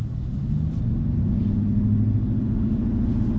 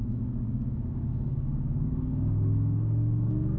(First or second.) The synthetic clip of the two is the second